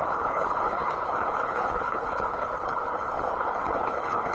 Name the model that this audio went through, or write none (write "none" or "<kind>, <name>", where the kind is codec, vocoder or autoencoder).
codec, HILCodec